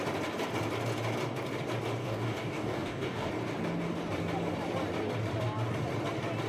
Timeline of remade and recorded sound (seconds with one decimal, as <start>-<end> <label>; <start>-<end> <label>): 0.0-2.0 recorded; 2.0-3.3 remade; 3.3-6.5 recorded